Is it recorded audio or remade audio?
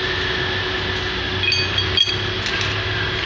recorded